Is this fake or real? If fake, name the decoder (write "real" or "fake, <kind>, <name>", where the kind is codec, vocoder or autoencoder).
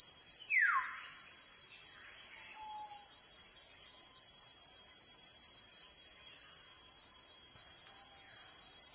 real